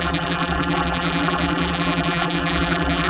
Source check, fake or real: fake